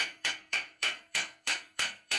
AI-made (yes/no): yes